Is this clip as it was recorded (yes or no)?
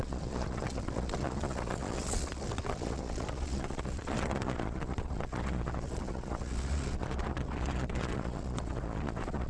no